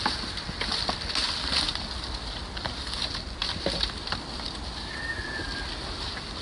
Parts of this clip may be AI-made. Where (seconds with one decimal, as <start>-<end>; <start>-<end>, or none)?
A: none